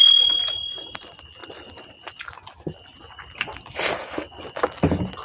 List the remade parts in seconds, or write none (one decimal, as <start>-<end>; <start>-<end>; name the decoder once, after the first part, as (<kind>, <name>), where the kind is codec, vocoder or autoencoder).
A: none